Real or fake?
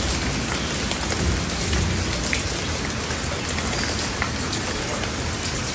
real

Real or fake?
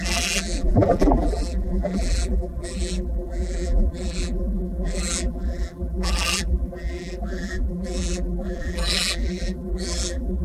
fake